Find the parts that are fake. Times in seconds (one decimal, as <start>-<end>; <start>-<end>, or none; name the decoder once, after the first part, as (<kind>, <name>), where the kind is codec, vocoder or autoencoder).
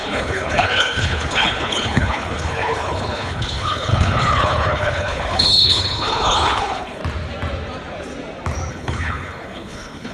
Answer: 0.0-7.0 (codec, HILCodec); 8.7-10.1